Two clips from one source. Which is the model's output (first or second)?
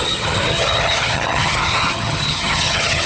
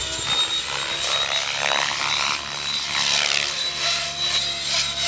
first